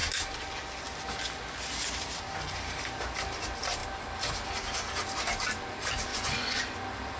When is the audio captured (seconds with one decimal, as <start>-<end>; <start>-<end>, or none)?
0.0-6.1; 6.6-7.2